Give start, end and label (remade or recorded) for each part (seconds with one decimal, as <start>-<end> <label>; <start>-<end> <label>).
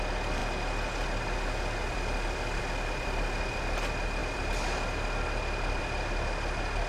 0.0-6.9 recorded